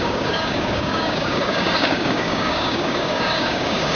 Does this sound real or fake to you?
fake